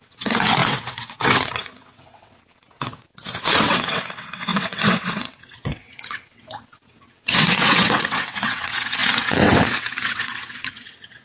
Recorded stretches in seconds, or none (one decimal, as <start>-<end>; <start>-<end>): none